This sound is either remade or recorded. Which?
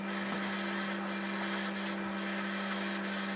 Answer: recorded